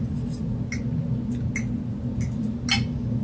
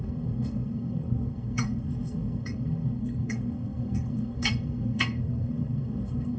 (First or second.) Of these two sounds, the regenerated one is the second